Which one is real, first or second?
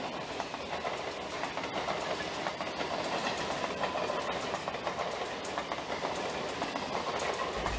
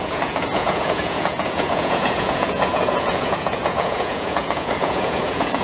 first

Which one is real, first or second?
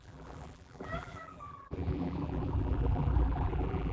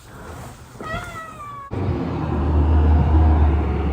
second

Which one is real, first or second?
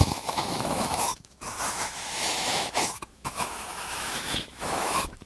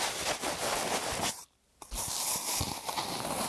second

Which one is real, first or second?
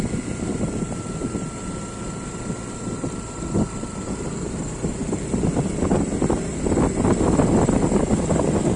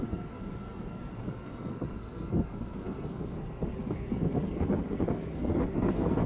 first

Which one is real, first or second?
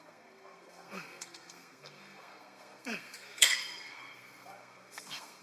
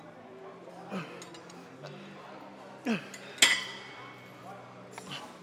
second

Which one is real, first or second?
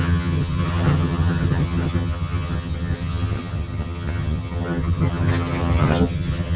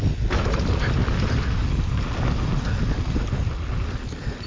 second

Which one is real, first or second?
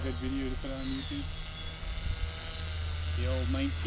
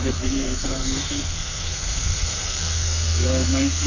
first